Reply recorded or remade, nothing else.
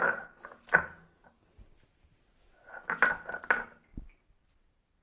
recorded